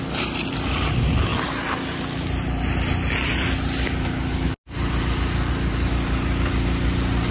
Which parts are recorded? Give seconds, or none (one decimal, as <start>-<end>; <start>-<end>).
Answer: 0.0-7.3